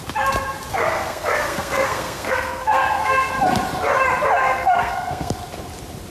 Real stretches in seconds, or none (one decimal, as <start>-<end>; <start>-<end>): 0.0-0.7; 3.3-4.4; 5.3-6.1